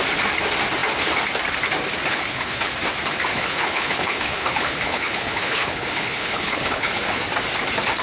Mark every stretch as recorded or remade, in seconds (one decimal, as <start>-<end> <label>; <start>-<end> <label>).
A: 0.0-2.1 recorded; 2.1-2.7 remade; 2.7-3.3 recorded; 3.3-7.2 remade; 7.2-8.0 recorded